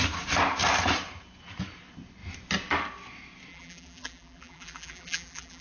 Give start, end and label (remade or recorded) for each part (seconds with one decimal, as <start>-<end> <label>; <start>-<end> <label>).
0.0-3.5 recorded; 3.5-5.6 remade